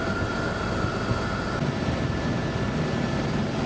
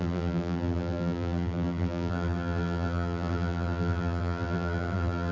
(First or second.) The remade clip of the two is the second